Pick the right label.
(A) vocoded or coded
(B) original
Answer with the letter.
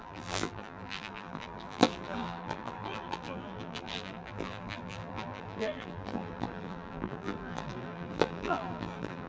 A